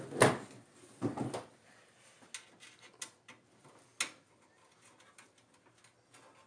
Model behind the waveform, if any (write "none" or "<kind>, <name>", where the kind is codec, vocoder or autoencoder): none